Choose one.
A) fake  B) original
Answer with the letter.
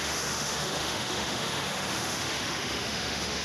A